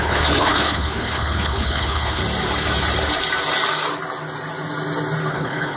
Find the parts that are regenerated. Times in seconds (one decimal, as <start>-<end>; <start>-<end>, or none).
0.0-2.2; 5.3-5.8